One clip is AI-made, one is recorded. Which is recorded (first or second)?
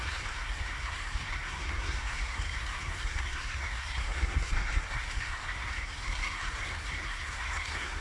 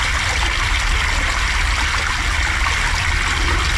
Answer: second